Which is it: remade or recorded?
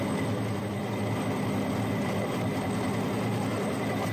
recorded